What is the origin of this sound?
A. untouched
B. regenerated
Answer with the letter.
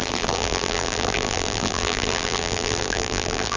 B